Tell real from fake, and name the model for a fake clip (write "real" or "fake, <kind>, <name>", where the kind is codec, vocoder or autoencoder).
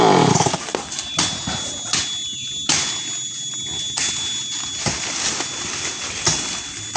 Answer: real